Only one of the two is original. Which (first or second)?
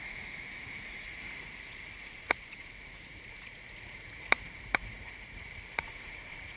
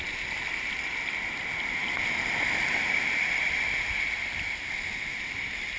second